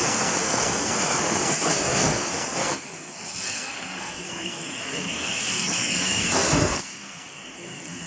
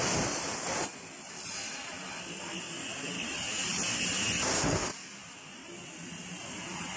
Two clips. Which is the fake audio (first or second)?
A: first